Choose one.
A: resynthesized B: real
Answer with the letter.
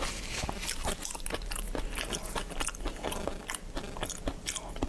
B